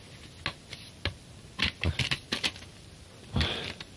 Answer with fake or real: real